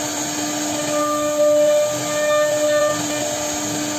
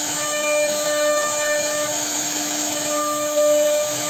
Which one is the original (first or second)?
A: first